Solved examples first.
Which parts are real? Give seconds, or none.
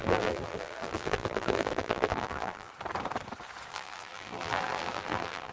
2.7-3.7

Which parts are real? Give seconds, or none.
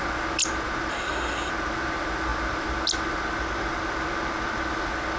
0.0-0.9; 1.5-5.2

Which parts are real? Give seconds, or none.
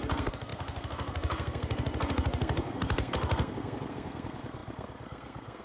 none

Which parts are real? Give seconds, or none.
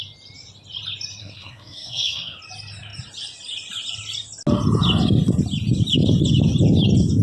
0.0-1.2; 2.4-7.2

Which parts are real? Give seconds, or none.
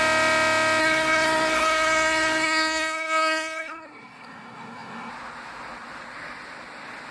0.0-0.8; 5.1-7.1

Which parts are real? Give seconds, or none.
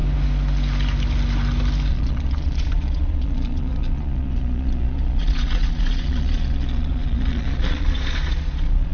0.0-1.9